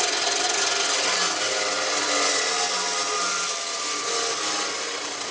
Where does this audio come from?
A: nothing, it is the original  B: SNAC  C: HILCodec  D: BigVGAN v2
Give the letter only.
A